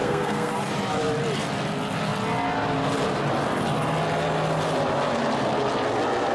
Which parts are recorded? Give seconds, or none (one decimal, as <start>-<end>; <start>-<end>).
0.5-6.3